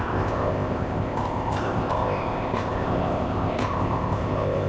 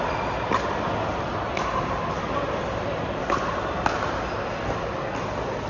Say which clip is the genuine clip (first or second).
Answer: second